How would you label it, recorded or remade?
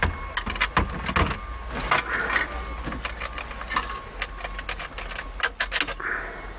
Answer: recorded